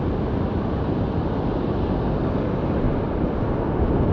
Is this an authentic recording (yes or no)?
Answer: yes